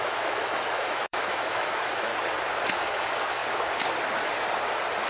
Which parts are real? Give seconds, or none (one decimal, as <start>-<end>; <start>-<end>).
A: 2.1-2.7; 3.4-5.1